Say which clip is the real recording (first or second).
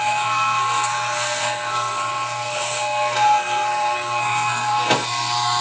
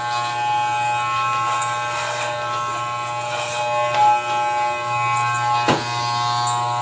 second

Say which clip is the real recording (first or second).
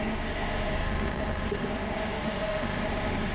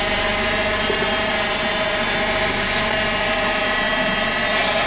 second